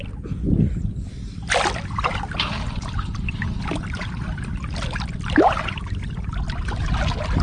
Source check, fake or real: real